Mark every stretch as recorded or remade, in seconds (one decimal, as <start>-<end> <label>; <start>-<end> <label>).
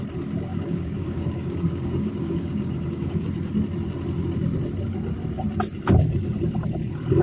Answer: 0.0-0.5 recorded; 0.5-3.3 remade; 3.3-7.2 recorded